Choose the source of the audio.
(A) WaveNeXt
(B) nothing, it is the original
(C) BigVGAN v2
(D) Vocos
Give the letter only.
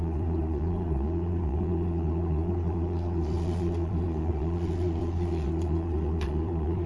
D